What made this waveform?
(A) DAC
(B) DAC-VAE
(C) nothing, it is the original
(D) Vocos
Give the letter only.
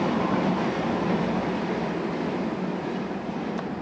C